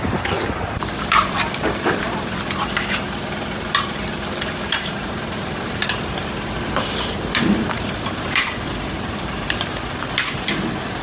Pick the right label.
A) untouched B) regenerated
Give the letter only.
B